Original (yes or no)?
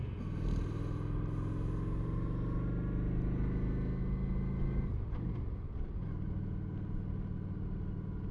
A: yes